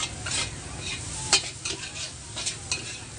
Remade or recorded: recorded